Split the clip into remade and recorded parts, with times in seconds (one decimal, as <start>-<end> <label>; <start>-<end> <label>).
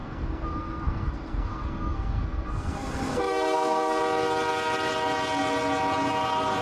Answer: 0.0-4.0 remade; 4.0-6.6 recorded